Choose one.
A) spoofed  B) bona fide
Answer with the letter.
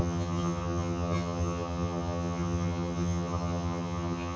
A